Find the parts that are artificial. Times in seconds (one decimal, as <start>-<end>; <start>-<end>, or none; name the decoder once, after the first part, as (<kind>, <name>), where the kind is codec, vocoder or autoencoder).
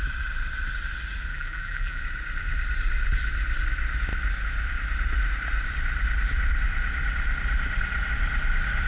1.3-2.0 (vocoder, BigVGAN v2)